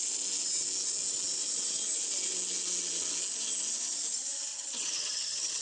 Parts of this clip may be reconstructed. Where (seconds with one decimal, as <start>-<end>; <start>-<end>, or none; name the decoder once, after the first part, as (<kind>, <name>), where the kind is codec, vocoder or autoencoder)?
4.5-5.6 (vocoder, HiFi-GAN)